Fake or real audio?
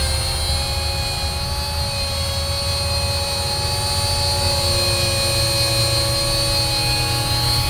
real